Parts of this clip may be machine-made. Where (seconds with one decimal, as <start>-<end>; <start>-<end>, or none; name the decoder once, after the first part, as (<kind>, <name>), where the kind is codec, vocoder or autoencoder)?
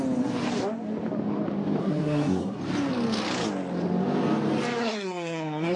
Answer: 1.8-2.6 (codec, SNAC); 4.8-5.8